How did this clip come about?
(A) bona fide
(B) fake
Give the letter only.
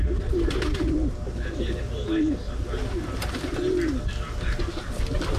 A